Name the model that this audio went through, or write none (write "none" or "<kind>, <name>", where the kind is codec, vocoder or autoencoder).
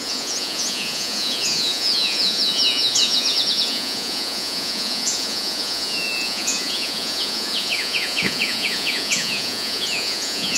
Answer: vocoder, Vocos